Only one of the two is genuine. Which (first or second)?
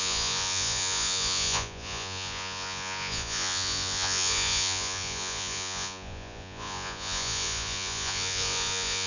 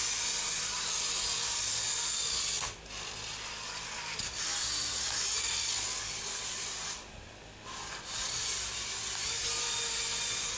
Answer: second